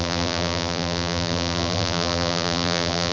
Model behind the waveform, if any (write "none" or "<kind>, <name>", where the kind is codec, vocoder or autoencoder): vocoder, BigVGAN v2